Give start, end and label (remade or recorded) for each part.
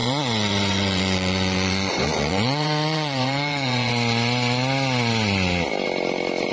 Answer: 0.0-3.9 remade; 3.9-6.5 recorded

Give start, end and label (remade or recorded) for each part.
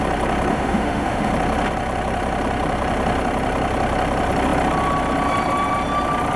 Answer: 0.0-0.5 recorded; 0.5-1.3 remade; 1.3-6.4 recorded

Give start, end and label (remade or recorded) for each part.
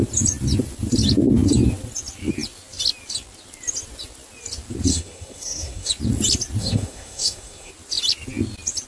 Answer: 0.0-4.9 recorded; 4.9-5.9 remade; 5.9-6.6 recorded; 6.6-7.7 remade; 7.7-8.9 recorded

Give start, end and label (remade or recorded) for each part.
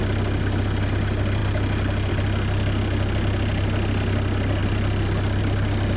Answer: 0.0-6.0 recorded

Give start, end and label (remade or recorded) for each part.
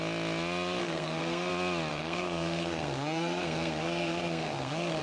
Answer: 0.0-0.8 recorded; 0.8-1.5 remade; 1.5-1.9 recorded; 1.9-5.0 remade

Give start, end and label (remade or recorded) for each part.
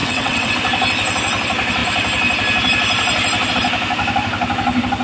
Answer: 0.0-0.5 remade; 0.5-5.0 recorded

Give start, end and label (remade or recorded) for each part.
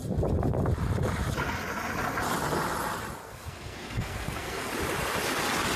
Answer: 0.0-3.2 recorded; 3.2-4.7 remade; 4.7-5.8 recorded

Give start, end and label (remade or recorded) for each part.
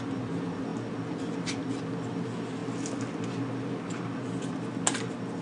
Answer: 0.0-5.4 recorded